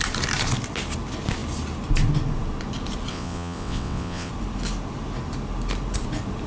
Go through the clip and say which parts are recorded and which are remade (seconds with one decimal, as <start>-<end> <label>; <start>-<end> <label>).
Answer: 0.0-3.1 recorded; 3.1-4.3 remade; 4.3-6.5 recorded